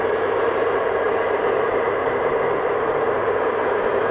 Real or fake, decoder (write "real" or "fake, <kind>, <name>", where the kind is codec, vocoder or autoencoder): fake, vocoder, BigVGAN v2